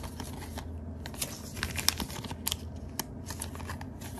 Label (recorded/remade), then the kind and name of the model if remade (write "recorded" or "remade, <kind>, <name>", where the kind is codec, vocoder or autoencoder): recorded